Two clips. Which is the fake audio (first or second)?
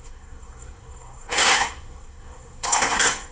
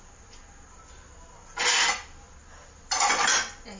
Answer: first